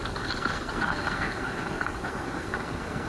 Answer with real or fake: fake